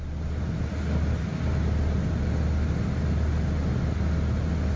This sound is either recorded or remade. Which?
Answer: recorded